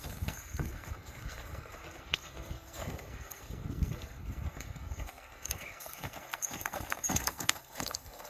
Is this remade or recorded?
remade